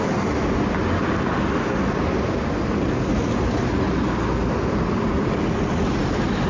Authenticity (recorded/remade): recorded